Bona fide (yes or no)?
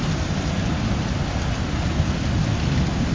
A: yes